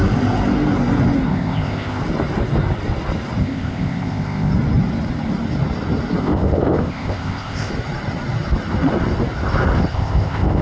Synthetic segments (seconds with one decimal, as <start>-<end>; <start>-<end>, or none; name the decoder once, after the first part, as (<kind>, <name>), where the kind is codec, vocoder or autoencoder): 1.3-2.0 (codec, ZipCodec); 3.4-4.5; 6.2-7.7; 9.9-10.6